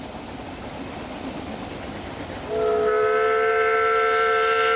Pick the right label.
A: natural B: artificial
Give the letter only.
A